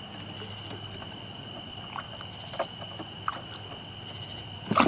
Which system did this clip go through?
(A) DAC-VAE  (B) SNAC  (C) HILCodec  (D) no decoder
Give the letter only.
D